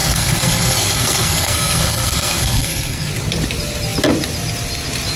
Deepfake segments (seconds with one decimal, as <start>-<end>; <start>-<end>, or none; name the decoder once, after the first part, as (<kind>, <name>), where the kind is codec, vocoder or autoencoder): 0.0-3.1 (codec, SNAC)